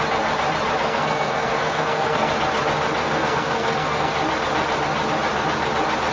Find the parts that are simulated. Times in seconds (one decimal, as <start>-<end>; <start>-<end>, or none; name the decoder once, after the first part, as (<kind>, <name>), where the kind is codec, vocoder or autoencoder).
0.8-2.3 (codec, SNAC); 3.0-4.1

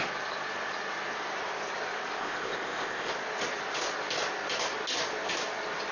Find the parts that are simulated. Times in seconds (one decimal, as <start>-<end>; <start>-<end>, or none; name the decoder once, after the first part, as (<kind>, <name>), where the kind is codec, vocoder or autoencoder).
2.2-3.1 (codec, ZipCodec)